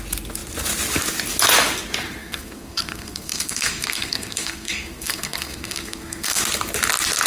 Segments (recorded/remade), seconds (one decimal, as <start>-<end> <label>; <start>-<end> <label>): 0.0-2.2 recorded; 2.2-6.4 remade; 6.4-7.3 recorded